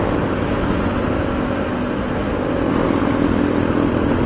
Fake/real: real